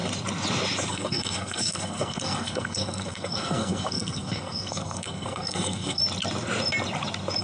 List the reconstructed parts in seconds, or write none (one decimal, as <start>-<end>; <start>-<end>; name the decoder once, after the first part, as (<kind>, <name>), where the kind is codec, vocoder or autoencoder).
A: 0.9-6.0 (codec, SNAC)